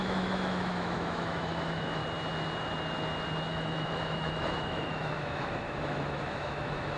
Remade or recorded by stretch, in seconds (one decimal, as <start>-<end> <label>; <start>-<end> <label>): 0.0-2.0 remade; 2.0-3.5 recorded; 3.5-7.0 remade